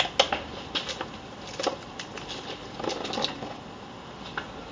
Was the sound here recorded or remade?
recorded